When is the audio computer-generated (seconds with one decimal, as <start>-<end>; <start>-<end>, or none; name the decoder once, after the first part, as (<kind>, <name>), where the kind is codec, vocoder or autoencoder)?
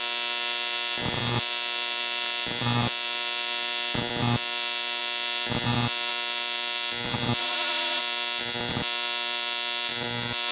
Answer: 7.4-8.0 (vocoder, Vocos)